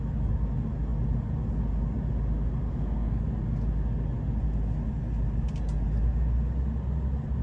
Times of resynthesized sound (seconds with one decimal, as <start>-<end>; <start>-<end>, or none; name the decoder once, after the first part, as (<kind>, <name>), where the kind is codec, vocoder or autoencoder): 2.7-3.2 (codec, SNAC)